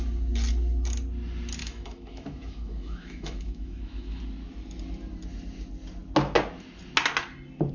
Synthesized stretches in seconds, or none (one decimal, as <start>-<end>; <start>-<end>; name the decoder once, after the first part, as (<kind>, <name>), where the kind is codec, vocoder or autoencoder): 1.6-4.2 (autoencoder, DAC-VAE)